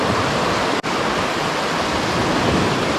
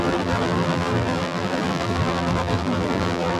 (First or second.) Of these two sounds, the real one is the first